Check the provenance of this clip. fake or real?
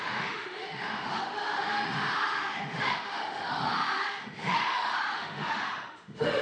fake